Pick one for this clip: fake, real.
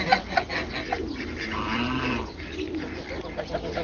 real